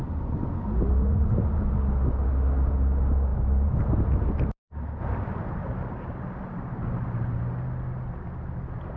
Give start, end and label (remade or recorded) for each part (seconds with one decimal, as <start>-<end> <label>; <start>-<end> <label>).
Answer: 0.0-1.1 recorded; 1.1-1.7 remade; 1.7-3.3 recorded; 3.3-6.6 remade; 6.6-9.0 recorded